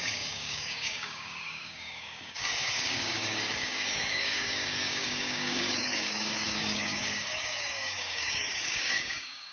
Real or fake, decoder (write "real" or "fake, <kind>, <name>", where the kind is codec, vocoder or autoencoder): fake, codec, DAC